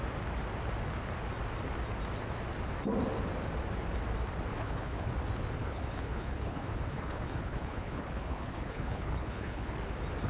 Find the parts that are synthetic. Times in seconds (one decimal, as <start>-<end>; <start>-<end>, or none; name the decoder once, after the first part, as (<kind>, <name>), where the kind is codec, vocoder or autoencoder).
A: 4.5-5.1 (codec, HILCodec); 5.6-9.7